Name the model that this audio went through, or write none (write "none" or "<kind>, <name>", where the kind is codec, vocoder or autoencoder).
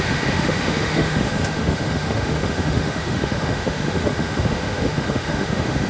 autoencoder, DAC-VAE